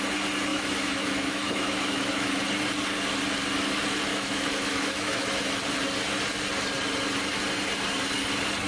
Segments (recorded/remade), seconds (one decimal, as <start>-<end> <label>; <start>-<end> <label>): 0.0-0.5 recorded; 0.5-2.4 remade; 2.4-4.1 recorded; 4.1-5.4 remade; 5.4-8.7 recorded